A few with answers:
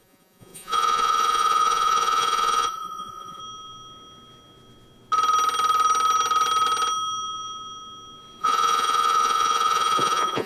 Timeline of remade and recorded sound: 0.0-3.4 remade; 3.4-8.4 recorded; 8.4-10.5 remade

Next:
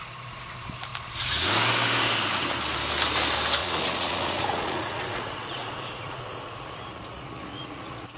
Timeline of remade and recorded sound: 0.0-3.6 recorded; 3.6-8.2 remade

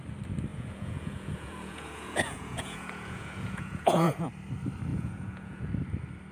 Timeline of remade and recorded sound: 0.0-0.5 recorded; 0.5-4.3 remade; 4.3-4.9 recorded; 4.9-5.7 remade; 5.7-6.3 recorded

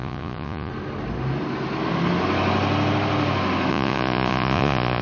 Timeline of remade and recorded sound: 0.0-0.7 remade; 0.7-3.7 recorded; 3.7-5.0 remade

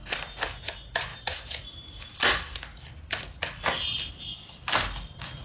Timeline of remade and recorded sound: 0.0-5.4 recorded

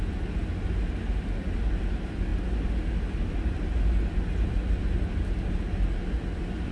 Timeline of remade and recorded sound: 0.0-6.7 recorded